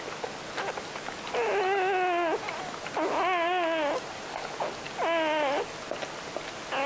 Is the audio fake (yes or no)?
no